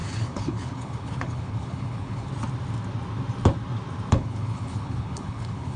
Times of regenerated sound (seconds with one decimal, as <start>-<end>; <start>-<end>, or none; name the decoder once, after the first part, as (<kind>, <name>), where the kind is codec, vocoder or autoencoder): 0.0-2.3 (codec, HILCodec); 4.1-5.8